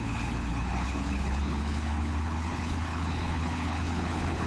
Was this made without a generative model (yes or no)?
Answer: no